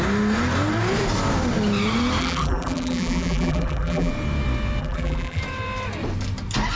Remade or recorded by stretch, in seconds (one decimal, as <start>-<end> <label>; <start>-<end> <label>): 0.0-2.2 recorded; 2.2-4.1 remade; 4.1-4.8 recorded; 4.8-5.4 remade; 5.4-6.8 recorded